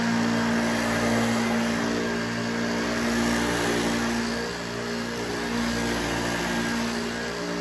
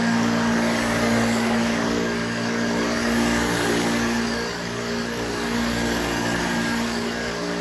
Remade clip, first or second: second